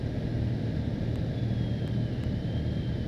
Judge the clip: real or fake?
real